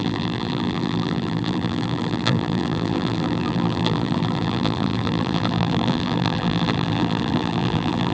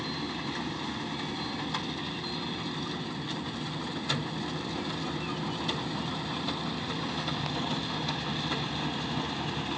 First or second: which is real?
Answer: second